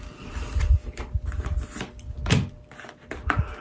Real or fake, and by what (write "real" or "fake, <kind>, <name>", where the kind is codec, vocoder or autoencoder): real